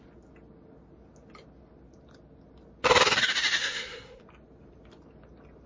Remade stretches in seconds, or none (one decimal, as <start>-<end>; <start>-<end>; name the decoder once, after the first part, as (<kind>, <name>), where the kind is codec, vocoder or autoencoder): 3.6-4.2 (codec, SNAC)